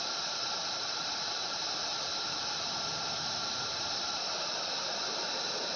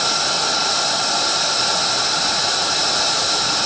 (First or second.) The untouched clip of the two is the second